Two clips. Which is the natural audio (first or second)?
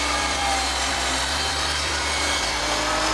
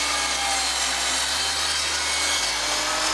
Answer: second